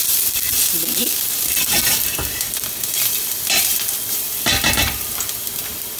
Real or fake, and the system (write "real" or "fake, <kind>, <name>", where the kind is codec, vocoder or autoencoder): fake, vocoder, BigVGAN v2